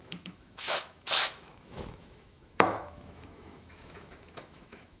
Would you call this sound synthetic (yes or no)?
yes